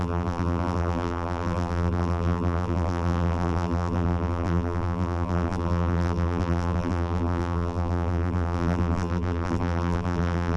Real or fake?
fake